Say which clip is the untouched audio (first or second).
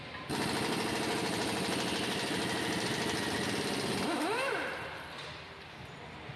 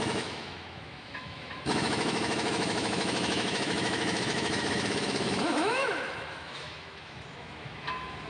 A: first